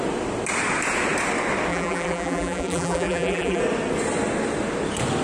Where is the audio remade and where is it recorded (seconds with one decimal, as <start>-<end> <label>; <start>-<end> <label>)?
0.0-1.7 recorded; 1.7-3.6 remade; 3.6-5.2 recorded